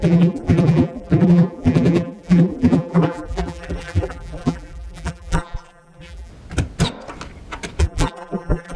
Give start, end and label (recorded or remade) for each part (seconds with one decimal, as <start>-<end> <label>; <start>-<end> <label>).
0.0-6.3 remade; 6.3-7.8 recorded; 7.8-8.8 remade